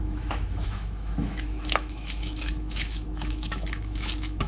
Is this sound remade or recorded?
remade